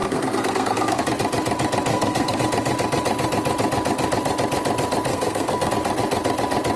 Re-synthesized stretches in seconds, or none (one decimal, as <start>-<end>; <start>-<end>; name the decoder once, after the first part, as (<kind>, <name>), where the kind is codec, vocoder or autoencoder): 0.0-1.0 (codec, SNAC); 1.9-2.4; 5.1-5.7